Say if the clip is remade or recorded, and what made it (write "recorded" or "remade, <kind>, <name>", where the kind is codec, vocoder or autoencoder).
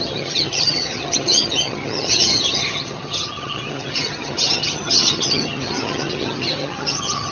remade, vocoder, HiFi-GAN